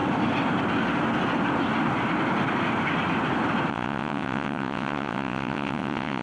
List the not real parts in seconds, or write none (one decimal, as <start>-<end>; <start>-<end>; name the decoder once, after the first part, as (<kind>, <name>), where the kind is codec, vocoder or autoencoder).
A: 3.7-6.2 (vocoder, WaveNeXt)